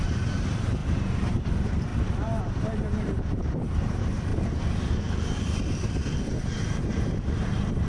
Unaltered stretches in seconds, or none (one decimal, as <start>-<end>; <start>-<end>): 4.3-6.3